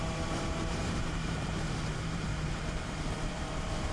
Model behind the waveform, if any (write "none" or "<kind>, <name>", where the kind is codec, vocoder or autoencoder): vocoder, BigVGAN v2